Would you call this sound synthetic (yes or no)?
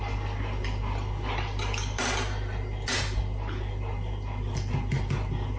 no